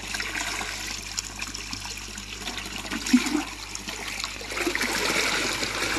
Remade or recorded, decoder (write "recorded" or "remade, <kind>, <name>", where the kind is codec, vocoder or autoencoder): recorded